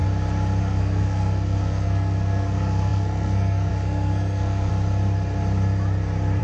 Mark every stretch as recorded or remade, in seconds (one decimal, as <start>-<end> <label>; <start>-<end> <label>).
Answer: 0.0-0.6 recorded; 0.6-4.7 remade; 4.7-6.4 recorded